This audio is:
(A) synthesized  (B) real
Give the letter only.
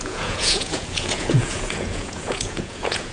A